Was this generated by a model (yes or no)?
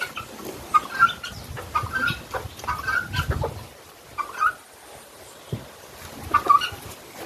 no